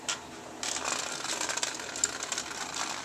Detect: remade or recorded recorded